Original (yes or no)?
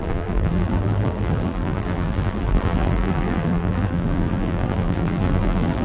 no